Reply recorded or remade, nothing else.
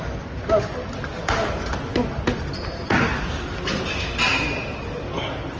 recorded